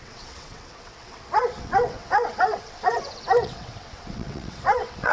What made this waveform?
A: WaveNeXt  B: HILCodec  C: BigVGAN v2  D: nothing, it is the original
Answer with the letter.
A